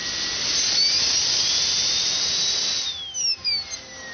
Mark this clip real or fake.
real